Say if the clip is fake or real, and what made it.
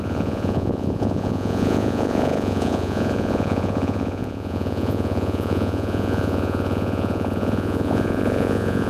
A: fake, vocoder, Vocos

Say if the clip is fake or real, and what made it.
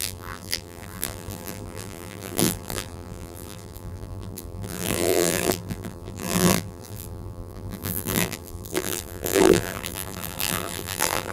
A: fake, vocoder, BigVGAN v2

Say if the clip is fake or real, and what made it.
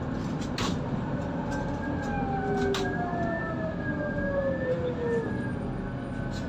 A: real